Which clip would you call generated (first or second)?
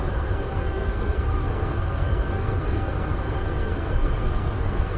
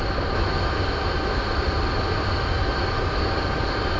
first